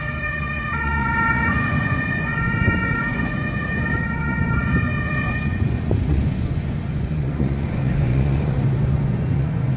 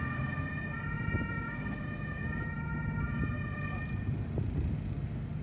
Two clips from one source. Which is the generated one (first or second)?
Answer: first